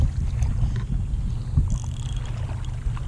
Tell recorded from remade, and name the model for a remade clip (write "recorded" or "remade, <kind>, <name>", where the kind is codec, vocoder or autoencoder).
recorded